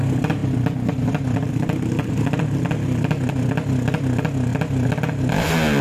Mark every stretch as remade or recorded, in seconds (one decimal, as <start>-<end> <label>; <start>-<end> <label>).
0.0-5.8 recorded